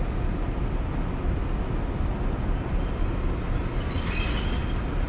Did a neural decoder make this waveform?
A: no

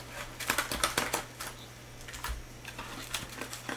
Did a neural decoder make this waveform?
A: no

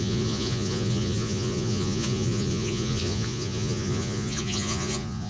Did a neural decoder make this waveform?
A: yes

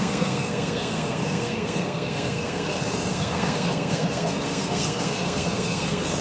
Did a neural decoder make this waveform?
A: yes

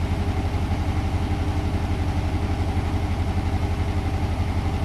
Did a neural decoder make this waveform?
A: no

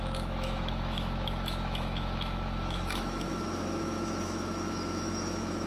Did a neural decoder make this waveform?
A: yes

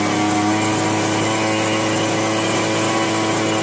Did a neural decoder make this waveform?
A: no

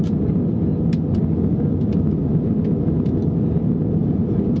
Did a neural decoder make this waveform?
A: no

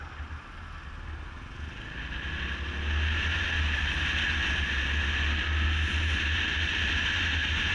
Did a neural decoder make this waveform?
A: no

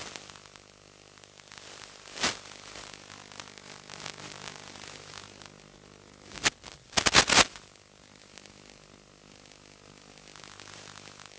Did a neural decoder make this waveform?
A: no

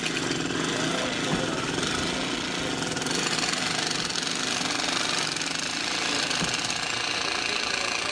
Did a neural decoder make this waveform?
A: no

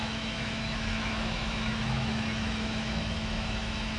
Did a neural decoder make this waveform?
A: yes